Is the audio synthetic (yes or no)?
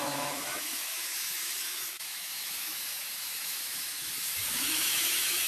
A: yes